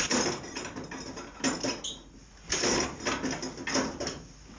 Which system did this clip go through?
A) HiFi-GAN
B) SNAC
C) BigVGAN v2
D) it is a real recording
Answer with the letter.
D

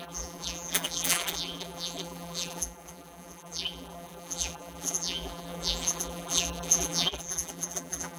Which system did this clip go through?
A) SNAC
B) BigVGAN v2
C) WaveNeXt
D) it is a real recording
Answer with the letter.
B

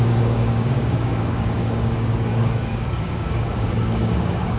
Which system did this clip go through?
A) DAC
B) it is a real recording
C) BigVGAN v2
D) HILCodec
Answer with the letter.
A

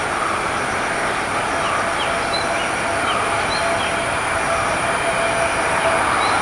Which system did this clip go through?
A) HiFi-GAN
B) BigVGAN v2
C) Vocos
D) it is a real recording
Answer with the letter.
D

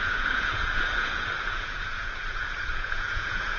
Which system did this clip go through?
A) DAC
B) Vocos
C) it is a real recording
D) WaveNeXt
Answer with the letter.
B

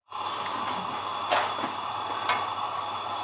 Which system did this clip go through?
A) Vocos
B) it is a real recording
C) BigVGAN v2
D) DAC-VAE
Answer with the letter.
B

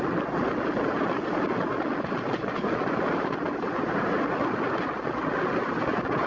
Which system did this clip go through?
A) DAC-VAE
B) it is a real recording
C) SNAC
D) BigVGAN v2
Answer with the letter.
B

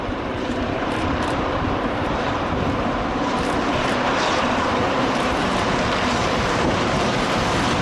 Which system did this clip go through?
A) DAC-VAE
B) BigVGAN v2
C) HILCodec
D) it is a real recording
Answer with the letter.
B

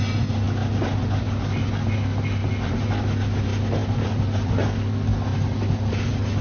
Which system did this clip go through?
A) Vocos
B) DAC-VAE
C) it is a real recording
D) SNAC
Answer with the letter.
C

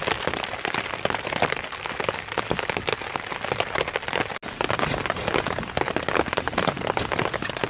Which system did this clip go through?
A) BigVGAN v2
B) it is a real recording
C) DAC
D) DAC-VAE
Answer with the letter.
B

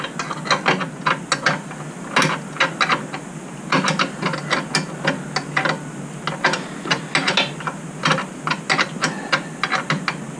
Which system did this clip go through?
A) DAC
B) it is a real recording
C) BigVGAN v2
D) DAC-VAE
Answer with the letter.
B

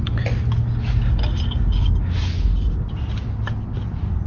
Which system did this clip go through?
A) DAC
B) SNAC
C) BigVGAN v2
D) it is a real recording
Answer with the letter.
D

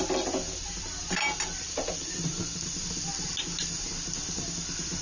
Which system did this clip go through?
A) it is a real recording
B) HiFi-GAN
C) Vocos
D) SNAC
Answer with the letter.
A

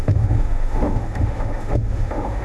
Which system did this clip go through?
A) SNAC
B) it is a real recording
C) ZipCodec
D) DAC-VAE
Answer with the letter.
D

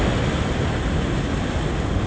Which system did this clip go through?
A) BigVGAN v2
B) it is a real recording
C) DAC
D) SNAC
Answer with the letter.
B